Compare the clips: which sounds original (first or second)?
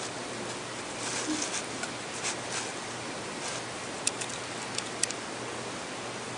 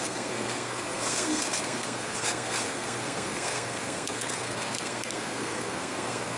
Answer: first